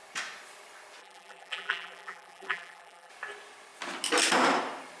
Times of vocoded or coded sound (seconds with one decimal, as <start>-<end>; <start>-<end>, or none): 1.0-3.1

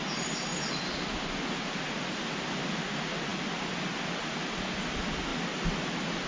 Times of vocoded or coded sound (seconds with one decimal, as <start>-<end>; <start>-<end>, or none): none

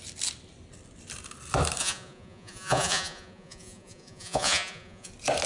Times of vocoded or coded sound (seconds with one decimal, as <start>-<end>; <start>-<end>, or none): 1.8-5.1

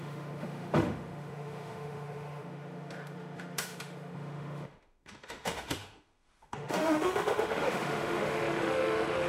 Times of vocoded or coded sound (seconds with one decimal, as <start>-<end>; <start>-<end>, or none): 0.0-9.3

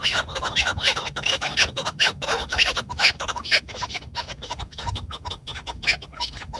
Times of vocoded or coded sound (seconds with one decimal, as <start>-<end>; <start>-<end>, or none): 0.0-6.6